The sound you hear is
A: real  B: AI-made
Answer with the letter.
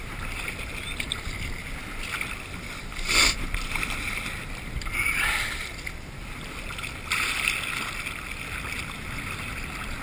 A